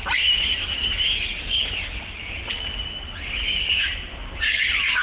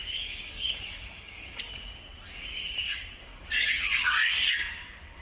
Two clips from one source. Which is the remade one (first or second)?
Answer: second